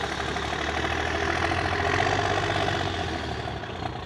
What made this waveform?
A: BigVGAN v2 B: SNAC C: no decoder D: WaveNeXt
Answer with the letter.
C